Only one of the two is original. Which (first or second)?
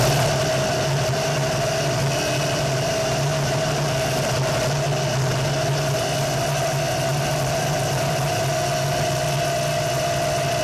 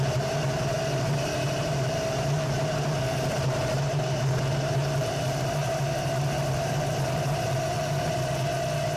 first